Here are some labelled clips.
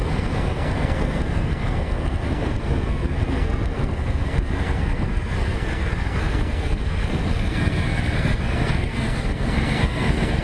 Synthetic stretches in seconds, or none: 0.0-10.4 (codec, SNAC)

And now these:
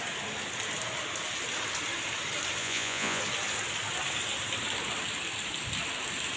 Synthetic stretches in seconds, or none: 2.6-3.2 (vocoder, Vocos)

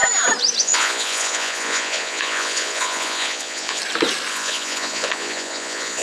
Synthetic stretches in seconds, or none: 0.6-3.8 (vocoder, Vocos); 4.3-6.0

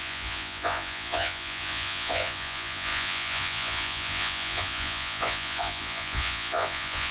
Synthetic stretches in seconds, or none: 0.0-7.1 (vocoder, Vocos)

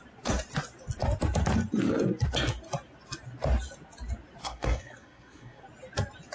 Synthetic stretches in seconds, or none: 4.4-5.6 (codec, SNAC)